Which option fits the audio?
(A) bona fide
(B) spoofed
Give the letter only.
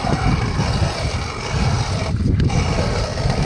A